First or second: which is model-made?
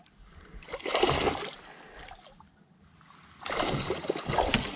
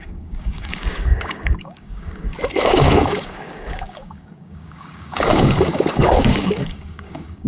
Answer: second